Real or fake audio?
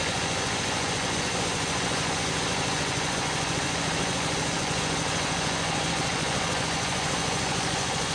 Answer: fake